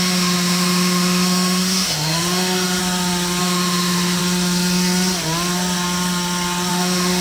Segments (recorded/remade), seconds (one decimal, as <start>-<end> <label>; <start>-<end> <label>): 0.0-2.8 remade; 2.8-3.4 recorded; 3.4-4.2 remade; 4.2-6.7 recorded; 6.7-7.2 remade